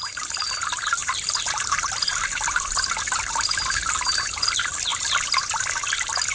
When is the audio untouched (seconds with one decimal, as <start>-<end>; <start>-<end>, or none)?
4.9-6.3